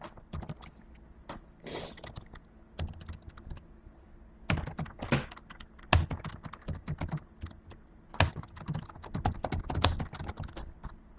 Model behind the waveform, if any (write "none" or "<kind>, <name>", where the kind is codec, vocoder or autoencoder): none